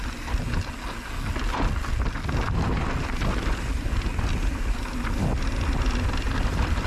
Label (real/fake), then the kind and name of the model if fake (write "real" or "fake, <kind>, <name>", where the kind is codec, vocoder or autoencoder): real